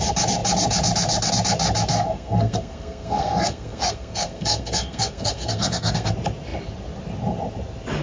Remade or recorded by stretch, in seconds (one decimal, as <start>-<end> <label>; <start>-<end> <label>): 0.0-1.9 recorded; 1.9-6.1 remade; 6.1-8.0 recorded